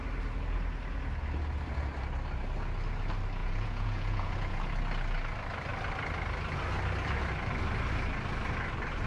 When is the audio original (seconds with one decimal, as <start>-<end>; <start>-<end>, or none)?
0.0-3.4; 4.7-9.1